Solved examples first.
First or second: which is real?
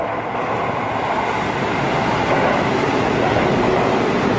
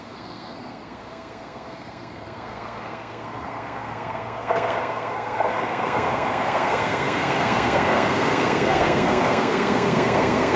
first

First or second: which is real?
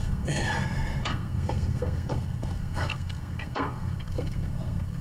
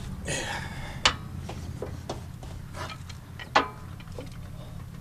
second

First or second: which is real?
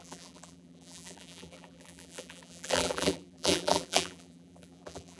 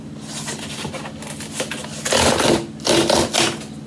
second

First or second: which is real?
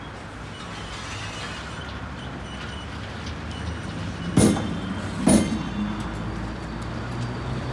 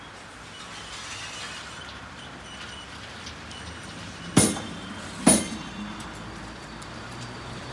first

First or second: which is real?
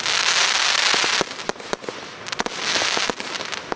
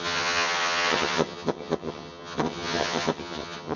first